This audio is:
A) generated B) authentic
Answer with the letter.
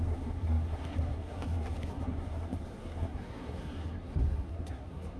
A